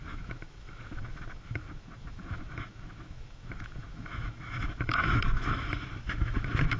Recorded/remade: remade